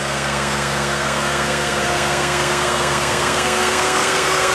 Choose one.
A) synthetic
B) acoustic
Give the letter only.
A